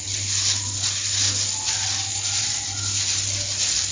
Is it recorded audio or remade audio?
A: recorded